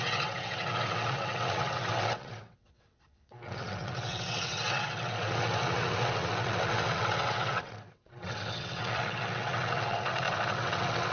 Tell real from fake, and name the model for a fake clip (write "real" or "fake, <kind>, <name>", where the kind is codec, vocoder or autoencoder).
fake, vocoder, WaveNeXt